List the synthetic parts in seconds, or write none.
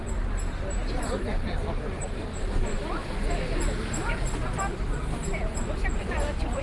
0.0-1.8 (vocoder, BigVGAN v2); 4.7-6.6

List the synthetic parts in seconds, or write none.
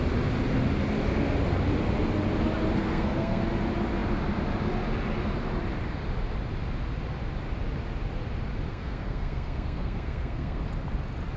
2.8-3.4 (codec, SNAC); 8.7-10.6